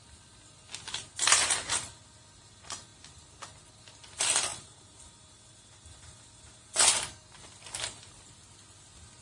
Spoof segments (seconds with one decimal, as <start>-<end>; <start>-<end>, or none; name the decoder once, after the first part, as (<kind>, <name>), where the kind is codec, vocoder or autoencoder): none